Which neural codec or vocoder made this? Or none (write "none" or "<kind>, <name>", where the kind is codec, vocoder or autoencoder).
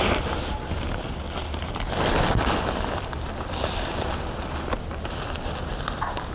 none